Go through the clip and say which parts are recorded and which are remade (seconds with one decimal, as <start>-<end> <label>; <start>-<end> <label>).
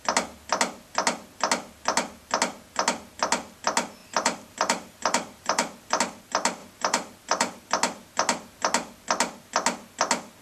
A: 0.0-4.0 recorded; 4.0-6.0 remade; 6.0-6.6 recorded; 6.6-7.6 remade; 7.6-10.4 recorded